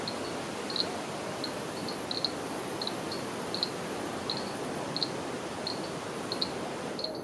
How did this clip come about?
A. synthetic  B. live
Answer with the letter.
B